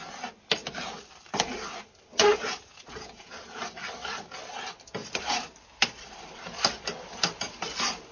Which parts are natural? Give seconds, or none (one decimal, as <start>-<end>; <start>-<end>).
0.0-2.3; 3.6-8.1